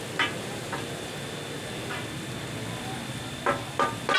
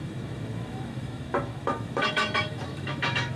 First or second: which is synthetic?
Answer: second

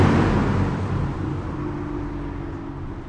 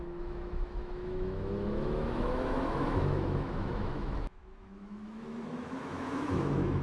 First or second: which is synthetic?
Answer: second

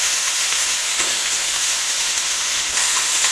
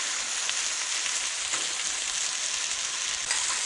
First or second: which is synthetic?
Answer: first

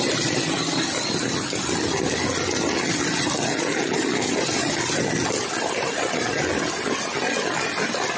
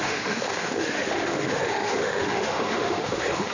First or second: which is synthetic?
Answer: second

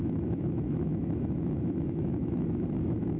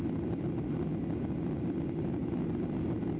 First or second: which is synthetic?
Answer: first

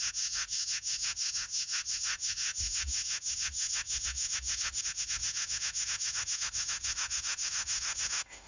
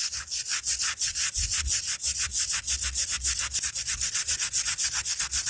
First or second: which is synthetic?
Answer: first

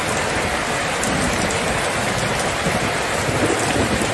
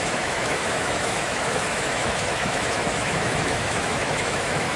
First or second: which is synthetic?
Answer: second